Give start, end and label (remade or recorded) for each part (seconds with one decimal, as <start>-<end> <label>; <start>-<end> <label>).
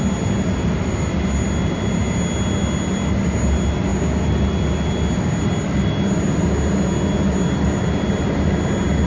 0.0-9.1 recorded